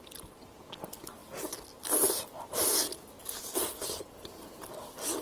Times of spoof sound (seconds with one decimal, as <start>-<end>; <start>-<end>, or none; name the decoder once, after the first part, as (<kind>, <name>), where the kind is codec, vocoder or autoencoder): none